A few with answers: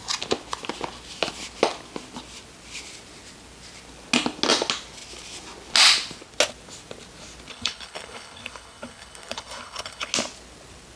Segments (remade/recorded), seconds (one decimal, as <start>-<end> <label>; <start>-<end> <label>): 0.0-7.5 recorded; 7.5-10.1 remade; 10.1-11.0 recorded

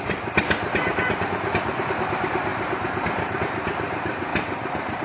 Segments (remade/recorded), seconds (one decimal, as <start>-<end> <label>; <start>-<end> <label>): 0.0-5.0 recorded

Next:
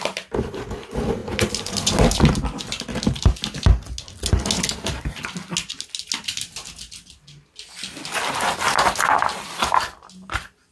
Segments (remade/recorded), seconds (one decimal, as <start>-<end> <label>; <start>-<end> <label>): 0.0-10.7 recorded

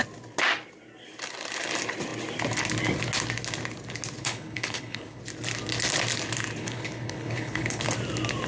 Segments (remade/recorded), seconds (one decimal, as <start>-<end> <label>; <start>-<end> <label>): 0.0-4.2 recorded; 4.2-5.2 remade; 5.2-6.6 recorded; 6.6-7.8 remade; 7.8-8.5 recorded

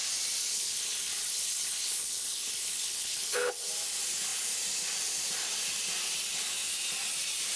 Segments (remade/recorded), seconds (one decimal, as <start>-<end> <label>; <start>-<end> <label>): 0.0-0.4 recorded; 0.4-3.7 remade; 3.7-7.6 recorded

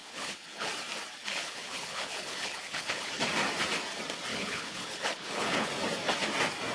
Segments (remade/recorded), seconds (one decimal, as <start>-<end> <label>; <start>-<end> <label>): 0.0-0.7 remade; 0.7-1.2 recorded; 1.2-3.1 remade; 3.1-4.3 recorded; 4.3-5.7 remade; 5.7-6.7 recorded

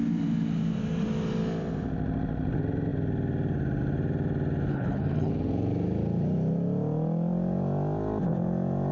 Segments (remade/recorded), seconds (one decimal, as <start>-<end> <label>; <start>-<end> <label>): 0.0-4.7 recorded; 4.7-5.3 remade; 5.3-8.9 recorded

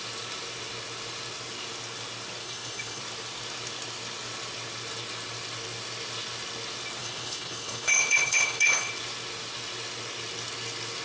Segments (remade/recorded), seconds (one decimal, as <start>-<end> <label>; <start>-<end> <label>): 0.0-2.4 recorded; 2.4-3.0 remade; 3.0-7.0 recorded; 7.0-8.9 remade; 8.9-11.0 recorded